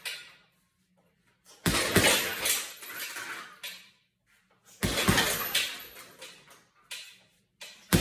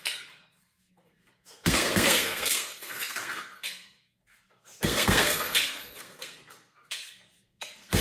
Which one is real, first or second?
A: first